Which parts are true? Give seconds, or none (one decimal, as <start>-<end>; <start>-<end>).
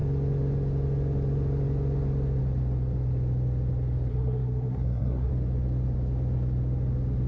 0.0-4.1; 5.3-7.3